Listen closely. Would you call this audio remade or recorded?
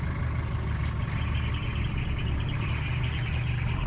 recorded